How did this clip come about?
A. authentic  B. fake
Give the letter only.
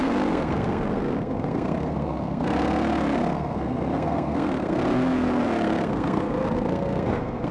B